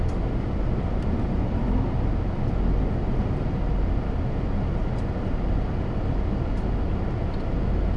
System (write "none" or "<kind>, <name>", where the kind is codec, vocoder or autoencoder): none